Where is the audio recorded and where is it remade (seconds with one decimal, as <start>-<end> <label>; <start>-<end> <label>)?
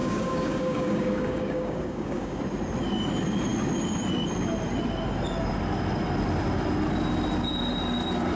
0.0-2.4 remade; 2.4-8.4 recorded